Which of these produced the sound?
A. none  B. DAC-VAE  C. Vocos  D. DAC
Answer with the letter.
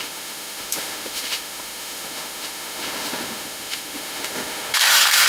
B